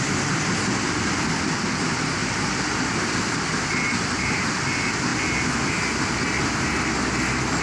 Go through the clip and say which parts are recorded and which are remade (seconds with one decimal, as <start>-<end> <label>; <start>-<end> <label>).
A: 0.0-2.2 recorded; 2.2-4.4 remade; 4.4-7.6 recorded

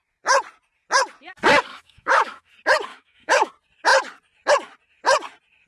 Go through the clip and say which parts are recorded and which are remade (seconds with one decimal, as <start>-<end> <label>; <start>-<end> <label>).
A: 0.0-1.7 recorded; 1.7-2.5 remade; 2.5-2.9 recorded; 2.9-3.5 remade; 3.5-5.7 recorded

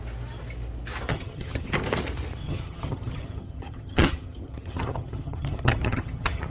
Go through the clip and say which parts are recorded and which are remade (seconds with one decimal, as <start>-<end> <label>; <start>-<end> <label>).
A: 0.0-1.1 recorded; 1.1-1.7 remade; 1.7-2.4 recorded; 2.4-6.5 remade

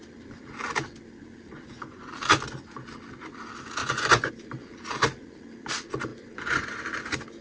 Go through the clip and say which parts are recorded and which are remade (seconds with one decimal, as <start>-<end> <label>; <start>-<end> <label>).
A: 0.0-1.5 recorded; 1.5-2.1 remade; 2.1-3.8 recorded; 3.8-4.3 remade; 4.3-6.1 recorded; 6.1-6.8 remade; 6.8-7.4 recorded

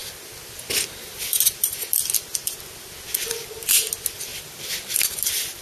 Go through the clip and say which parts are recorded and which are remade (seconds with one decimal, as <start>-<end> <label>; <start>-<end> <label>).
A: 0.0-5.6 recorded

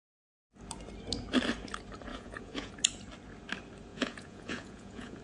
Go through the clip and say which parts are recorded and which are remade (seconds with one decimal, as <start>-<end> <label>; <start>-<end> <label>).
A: 0.0-2.1 recorded; 2.1-2.7 remade; 2.7-3.9 recorded; 3.9-5.2 remade

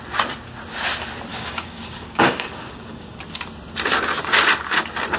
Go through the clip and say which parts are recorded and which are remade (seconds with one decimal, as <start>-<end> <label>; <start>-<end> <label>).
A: 0.0-1.3 recorded; 1.3-3.2 remade; 3.2-5.2 recorded

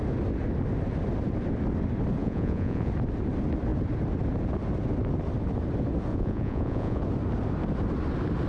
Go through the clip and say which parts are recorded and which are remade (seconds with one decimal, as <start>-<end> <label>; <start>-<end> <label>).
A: 0.0-2.2 recorded; 2.2-2.9 remade; 2.9-6.1 recorded; 6.1-7.0 remade; 7.0-8.5 recorded